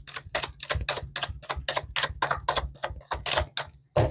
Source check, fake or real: real